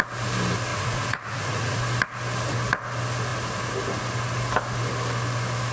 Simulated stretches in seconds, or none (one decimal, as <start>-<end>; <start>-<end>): 0.7-1.8